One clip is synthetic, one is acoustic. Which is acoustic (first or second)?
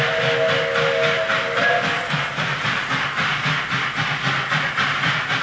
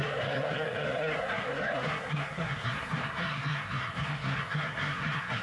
first